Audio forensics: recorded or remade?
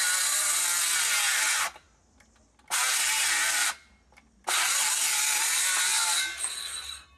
recorded